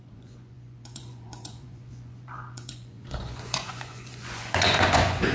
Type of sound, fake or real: fake